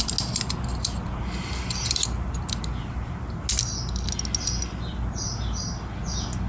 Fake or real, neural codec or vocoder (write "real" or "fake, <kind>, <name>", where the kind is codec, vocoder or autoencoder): real